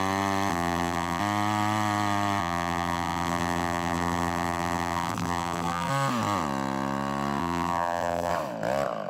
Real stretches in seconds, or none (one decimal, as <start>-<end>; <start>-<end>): 0.0-0.5; 1.2-2.4; 5.9-7.4; 8.3-9.1